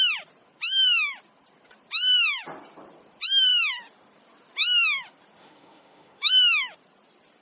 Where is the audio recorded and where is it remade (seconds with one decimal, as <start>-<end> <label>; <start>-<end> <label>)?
0.0-5.4 recorded; 5.4-6.3 remade; 6.3-7.4 recorded